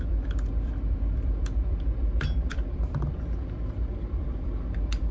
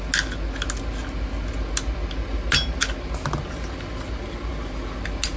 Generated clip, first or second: first